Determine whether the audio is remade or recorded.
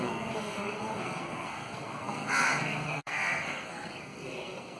remade